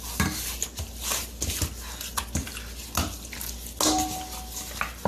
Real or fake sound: real